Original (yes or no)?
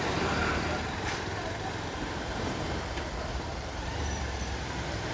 no